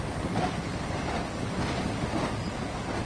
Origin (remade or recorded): recorded